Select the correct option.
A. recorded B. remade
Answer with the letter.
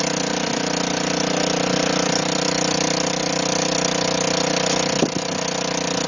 A